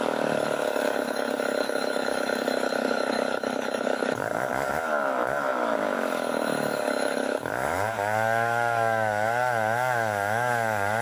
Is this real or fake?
fake